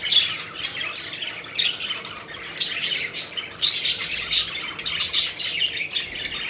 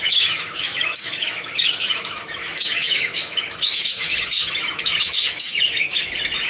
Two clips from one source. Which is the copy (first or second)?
second